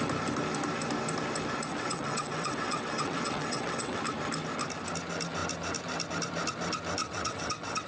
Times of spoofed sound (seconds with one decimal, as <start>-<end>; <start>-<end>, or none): 1.7-4.0; 7.0-7.9